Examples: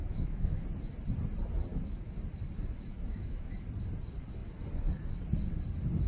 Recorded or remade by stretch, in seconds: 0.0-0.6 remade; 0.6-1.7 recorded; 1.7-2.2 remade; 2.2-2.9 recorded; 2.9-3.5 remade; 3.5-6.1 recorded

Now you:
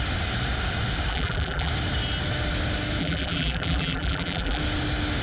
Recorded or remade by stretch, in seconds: 0.0-1.1 recorded; 1.1-1.7 remade; 1.7-3.0 recorded; 3.0-4.6 remade; 4.6-5.2 recorded